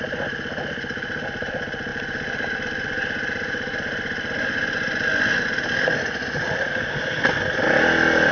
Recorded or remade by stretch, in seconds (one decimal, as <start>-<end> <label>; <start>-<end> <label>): 0.0-8.3 recorded